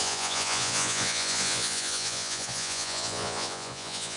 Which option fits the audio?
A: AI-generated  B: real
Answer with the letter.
A